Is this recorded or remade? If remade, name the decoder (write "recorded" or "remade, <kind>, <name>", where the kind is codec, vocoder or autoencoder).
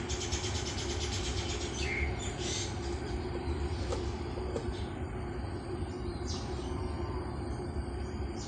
recorded